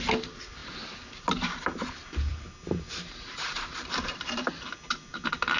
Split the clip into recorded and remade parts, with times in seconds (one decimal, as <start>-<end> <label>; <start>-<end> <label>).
0.0-0.6 recorded; 0.6-1.3 remade; 1.3-2.3 recorded; 2.3-4.5 remade; 4.5-5.1 recorded; 5.1-5.6 remade